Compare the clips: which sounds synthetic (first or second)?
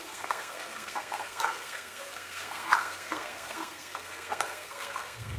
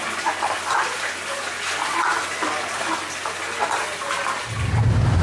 first